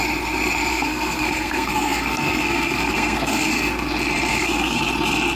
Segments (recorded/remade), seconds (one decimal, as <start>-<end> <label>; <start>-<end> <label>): 0.0-0.7 recorded; 0.7-3.5 remade; 3.5-4.3 recorded; 4.3-4.8 remade; 4.8-5.4 recorded